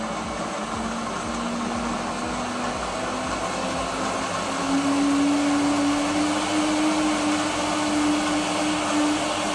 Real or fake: real